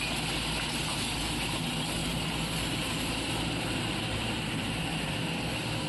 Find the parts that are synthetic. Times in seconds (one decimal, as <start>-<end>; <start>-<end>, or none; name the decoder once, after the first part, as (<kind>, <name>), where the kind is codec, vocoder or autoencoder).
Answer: 2.0-5.5 (vocoder, BigVGAN v2)

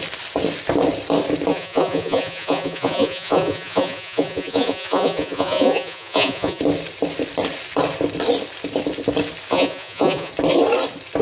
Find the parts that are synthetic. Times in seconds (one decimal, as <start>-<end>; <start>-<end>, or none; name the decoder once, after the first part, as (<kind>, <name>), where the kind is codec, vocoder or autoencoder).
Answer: 1.5-6.6 (vocoder, Vocos); 9.5-10.3

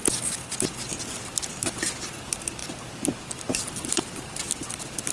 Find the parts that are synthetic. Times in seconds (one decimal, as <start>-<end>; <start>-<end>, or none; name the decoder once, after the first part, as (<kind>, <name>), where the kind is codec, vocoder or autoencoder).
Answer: 0.0-0.8 (vocoder, BigVGAN v2)

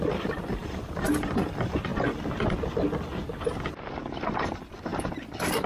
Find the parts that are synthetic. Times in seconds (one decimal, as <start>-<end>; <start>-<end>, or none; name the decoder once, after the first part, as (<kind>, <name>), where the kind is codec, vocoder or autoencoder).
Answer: 0.0-1.9 (vocoder, BigVGAN v2); 3.7-5.7

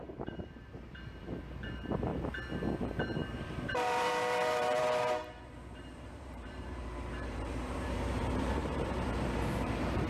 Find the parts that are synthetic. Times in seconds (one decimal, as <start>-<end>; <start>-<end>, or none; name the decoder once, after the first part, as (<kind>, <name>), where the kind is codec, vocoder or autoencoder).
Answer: 0.0-2.1 (vocoder, BigVGAN v2); 2.8-10.1